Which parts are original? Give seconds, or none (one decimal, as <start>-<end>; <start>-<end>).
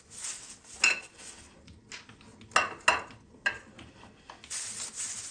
0.0-5.3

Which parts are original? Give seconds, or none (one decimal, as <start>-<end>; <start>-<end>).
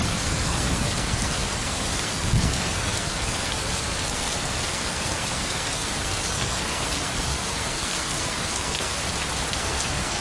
9.0-9.5